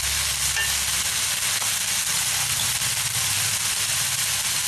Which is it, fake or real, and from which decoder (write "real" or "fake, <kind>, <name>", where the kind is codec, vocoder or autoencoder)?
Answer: real